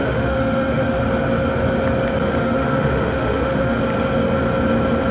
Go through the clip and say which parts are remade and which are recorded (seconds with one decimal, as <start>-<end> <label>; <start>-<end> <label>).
0.0-1.0 remade; 1.0-2.4 recorded; 2.4-3.8 remade; 3.8-5.1 recorded